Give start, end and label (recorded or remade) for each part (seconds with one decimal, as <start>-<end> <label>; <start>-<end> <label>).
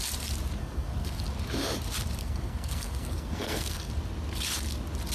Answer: 0.0-0.6 recorded; 0.6-1.2 remade; 1.2-2.2 recorded; 2.2-3.9 remade; 3.9-5.1 recorded